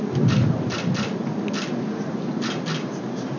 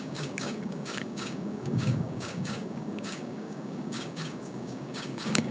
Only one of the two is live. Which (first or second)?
first